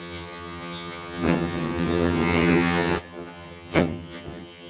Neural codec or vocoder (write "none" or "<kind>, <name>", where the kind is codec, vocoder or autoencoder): vocoder, HiFi-GAN